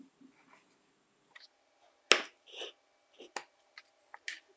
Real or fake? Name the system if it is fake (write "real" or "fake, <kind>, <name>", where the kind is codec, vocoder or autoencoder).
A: real